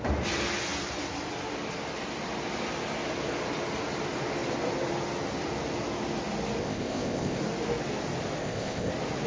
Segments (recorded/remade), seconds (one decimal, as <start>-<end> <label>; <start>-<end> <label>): 0.0-6.6 recorded; 6.6-7.4 remade; 7.4-8.4 recorded; 8.4-8.9 remade; 8.9-9.3 recorded